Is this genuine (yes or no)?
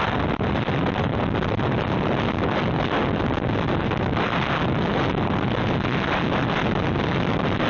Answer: yes